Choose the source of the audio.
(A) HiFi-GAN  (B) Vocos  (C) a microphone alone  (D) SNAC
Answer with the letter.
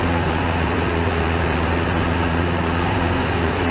B